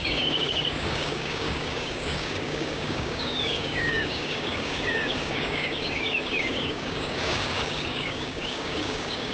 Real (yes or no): no